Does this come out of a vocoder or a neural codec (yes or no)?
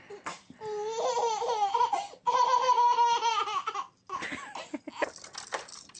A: no